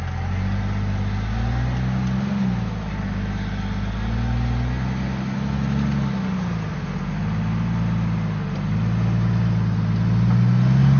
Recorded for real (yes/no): yes